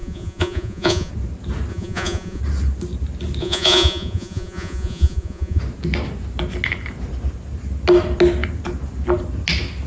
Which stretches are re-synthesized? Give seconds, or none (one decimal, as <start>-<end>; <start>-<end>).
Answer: 0.0-1.1; 1.7-2.4; 3.4-5.6